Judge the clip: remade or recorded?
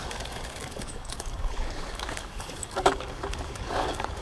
remade